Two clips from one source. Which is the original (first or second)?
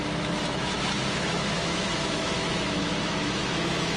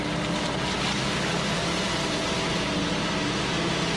second